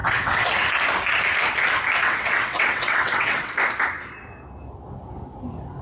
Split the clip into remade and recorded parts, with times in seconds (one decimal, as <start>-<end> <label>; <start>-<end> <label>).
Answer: 0.0-0.5 remade; 0.5-2.0 recorded; 2.0-3.5 remade; 3.5-5.8 recorded

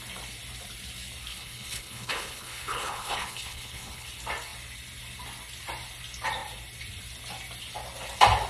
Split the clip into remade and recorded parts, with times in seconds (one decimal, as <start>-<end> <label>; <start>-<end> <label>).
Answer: 0.0-1.3 recorded; 1.3-4.1 remade; 4.1-8.5 recorded

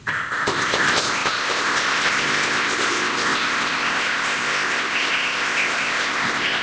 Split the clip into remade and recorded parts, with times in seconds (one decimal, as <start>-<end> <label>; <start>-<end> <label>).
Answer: 0.0-6.6 remade

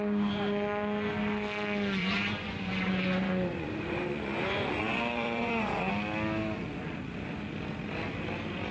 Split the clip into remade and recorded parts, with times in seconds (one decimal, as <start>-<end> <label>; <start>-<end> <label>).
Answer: 0.0-2.0 recorded; 2.0-5.9 remade; 5.9-8.7 recorded